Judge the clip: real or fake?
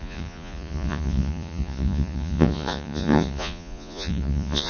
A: fake